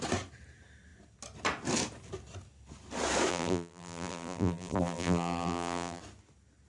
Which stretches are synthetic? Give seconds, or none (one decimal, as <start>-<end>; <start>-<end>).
3.3-6.0